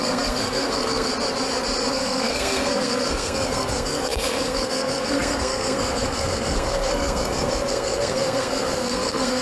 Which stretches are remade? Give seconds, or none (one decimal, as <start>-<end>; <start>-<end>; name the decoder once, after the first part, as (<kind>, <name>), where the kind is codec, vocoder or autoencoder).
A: 0.0-1.1 (codec, SNAC); 1.9-9.4

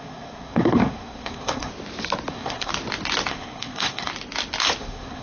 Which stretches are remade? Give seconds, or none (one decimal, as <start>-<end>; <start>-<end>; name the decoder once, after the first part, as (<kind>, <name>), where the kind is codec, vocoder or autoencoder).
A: 0.0-1.7 (codec, SNAC); 2.3-2.7; 3.3-4.1; 4.8-5.2

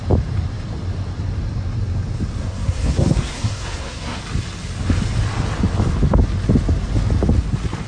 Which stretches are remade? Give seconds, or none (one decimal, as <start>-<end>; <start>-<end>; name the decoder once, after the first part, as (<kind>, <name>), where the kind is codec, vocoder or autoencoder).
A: 2.4-4.2 (codec, SNAC)

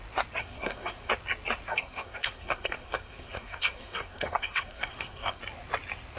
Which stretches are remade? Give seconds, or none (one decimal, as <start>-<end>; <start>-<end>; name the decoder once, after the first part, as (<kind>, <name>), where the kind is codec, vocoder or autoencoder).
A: 0.4-1.1 (codec, SNAC); 1.7-5.4